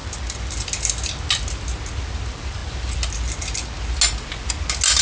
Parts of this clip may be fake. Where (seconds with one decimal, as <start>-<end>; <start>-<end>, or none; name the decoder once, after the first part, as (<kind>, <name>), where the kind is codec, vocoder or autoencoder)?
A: none